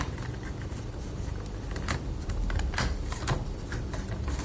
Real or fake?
fake